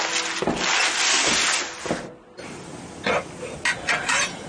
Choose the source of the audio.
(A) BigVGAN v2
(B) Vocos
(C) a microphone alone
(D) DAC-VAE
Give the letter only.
C